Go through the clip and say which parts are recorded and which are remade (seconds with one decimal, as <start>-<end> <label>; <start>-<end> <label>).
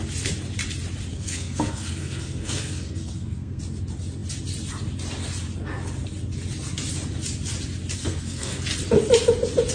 0.0-1.1 recorded; 1.1-3.6 remade; 3.6-8.0 recorded; 8.0-8.6 remade; 8.6-9.7 recorded